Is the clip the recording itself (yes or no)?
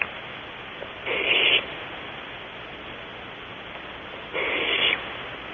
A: yes